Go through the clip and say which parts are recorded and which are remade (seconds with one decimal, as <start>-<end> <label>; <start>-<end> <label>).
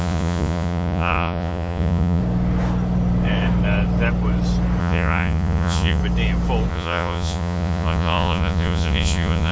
0.0-2.2 remade; 2.2-4.8 recorded; 4.8-6.0 remade; 6.0-6.7 recorded; 6.7-9.5 remade